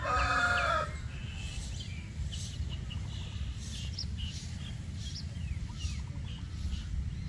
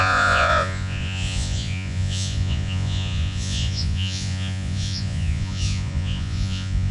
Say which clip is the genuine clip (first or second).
first